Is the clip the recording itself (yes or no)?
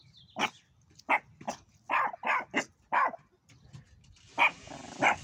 yes